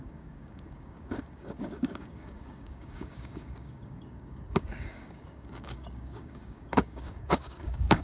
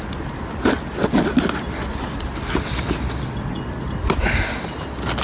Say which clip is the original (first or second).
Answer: second